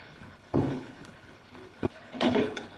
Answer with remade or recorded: remade